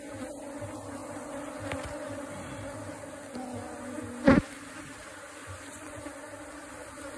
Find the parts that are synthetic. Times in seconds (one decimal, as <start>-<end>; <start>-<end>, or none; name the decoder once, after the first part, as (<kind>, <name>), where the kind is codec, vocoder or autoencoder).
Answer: 5.4-6.0 (vocoder, Vocos)